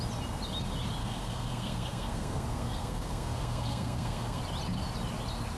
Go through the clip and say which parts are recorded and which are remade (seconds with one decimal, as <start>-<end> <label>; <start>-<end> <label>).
0.0-1.0 recorded; 1.0-4.4 remade; 4.4-5.6 recorded

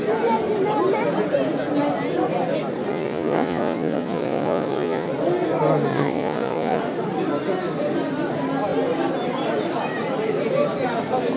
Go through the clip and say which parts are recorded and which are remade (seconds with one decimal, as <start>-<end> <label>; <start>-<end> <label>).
0.0-2.9 recorded; 2.9-5.1 remade; 5.1-5.9 recorded; 5.9-6.8 remade; 6.8-11.4 recorded

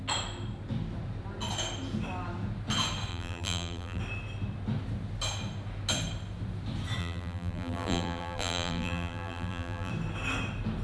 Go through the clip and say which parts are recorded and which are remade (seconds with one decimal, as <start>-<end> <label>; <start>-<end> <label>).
0.0-3.1 recorded; 3.1-4.0 remade; 4.0-7.0 recorded; 7.0-9.9 remade; 9.9-10.8 recorded

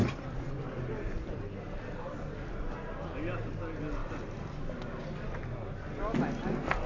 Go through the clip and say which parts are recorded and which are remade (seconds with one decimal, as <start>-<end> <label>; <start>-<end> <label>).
0.0-2.6 remade; 2.6-4.0 recorded; 4.0-4.6 remade; 4.6-6.9 recorded

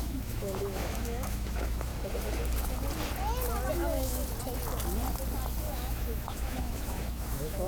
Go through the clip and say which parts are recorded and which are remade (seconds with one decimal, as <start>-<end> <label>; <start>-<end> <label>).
0.0-1.9 remade; 1.9-3.7 recorded; 3.7-4.2 remade; 4.2-5.6 recorded; 5.6-7.7 remade